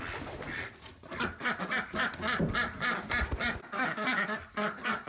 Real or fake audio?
real